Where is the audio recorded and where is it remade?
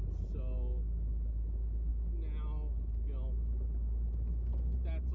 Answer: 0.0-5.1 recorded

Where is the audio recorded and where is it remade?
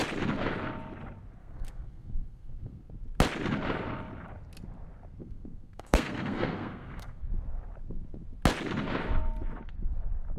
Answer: 0.0-1.4 recorded; 1.4-2.9 remade; 2.9-5.2 recorded; 5.2-7.3 remade; 7.3-10.4 recorded